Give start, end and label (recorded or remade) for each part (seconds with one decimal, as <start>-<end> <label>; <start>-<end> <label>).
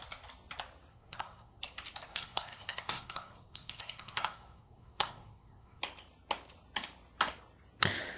0.0-0.9 recorded; 0.9-1.6 remade; 1.6-2.1 recorded; 2.1-5.8 remade; 5.8-8.2 recorded